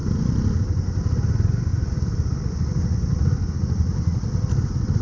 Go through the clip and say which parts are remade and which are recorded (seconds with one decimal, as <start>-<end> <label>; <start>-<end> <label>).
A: 0.0-5.0 recorded